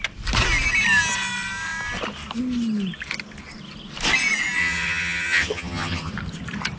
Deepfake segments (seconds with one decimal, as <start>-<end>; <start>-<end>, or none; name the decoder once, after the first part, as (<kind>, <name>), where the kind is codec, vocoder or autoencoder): 4.6-6.1 (vocoder, HiFi-GAN)